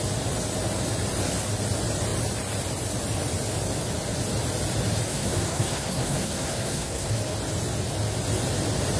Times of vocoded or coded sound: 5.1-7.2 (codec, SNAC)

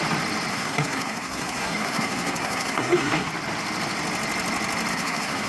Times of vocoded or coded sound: 0.5-3.3 (codec, SNAC); 4.9-5.5

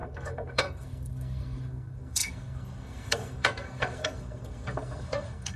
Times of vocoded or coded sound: 0.0-5.6 (codec, SNAC)

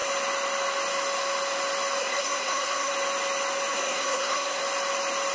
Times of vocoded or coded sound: 2.0-2.9 (codec, SNAC); 3.7-4.6

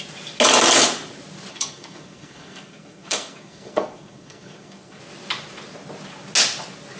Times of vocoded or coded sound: 1.5-5.0 (codec, SNAC)

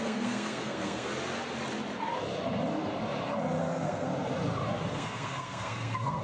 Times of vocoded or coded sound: 0.0-1.1 (codec, SNAC); 3.6-4.1; 4.9-6.2

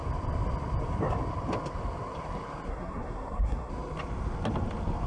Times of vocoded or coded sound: 2.7-3.7 (codec, SNAC)

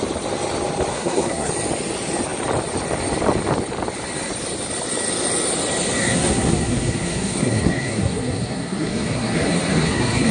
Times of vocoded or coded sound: 0.9-1.5 (codec, SNAC); 6.0-10.3